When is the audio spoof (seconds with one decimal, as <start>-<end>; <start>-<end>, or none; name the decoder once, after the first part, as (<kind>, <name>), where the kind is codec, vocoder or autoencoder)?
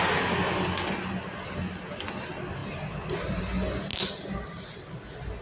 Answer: none